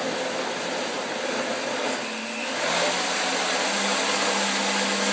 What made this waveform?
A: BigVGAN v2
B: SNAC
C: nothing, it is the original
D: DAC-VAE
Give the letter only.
C